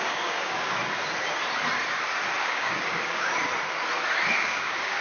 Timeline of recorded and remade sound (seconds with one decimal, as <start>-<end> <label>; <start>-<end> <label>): 0.0-0.8 remade; 0.8-2.4 recorded; 2.4-3.3 remade; 3.3-4.4 recorded; 4.4-5.0 remade